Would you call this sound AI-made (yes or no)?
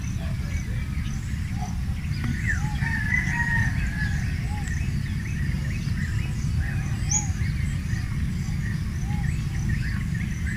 no